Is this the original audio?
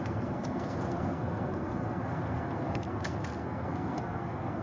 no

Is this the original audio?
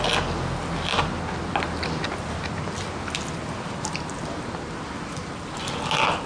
yes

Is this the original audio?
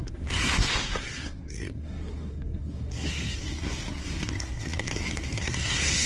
no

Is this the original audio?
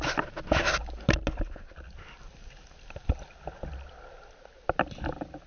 yes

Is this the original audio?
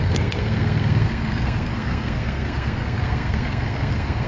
no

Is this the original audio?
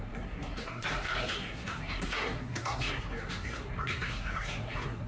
no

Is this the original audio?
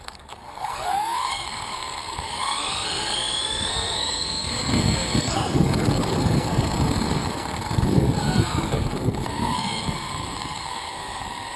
no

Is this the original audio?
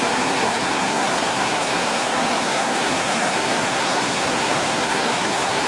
no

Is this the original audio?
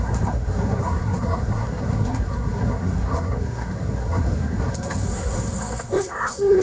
no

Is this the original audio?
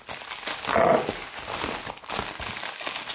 yes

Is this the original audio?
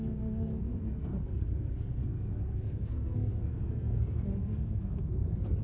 no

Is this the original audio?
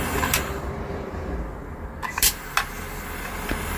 yes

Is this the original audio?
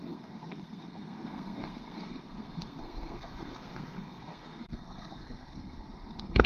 no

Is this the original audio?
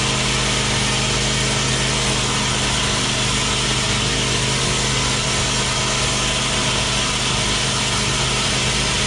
yes